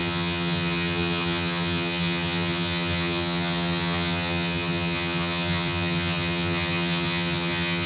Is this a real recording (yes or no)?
no